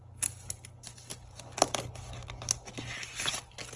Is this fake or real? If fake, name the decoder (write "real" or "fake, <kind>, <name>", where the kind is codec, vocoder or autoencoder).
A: real